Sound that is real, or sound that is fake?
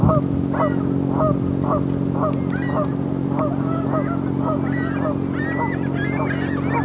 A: real